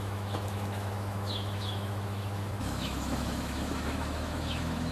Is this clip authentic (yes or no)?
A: no